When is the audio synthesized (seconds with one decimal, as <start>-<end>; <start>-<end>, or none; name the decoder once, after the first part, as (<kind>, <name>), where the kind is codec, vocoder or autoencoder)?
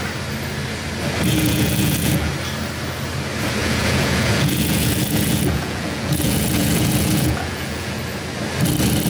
1.3-2.3 (vocoder, Vocos); 3.6-8.0